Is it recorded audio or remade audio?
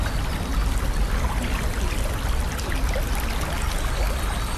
recorded